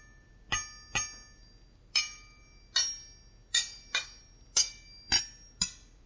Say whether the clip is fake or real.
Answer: real